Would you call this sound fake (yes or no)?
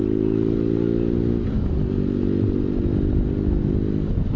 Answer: no